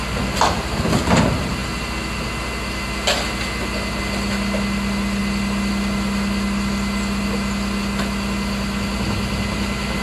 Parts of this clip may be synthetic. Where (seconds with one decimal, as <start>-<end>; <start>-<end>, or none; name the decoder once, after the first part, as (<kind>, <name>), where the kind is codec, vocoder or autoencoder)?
none